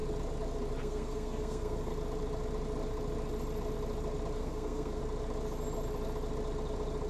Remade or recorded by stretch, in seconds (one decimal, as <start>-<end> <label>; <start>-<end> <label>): 0.0-0.8 recorded; 0.8-1.9 remade; 1.9-4.4 recorded; 4.4-5.0 remade; 5.0-7.1 recorded